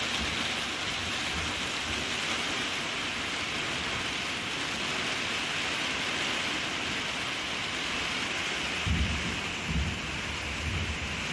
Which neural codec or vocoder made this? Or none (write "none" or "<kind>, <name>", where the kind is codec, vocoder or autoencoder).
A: none